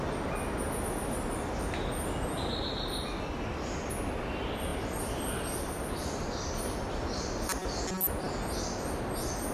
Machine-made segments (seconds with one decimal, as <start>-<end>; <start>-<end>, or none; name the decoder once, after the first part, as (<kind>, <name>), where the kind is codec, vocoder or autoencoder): 4.7-7.9 (vocoder, BigVGAN v2)